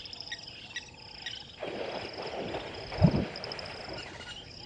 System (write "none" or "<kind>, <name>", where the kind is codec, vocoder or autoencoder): none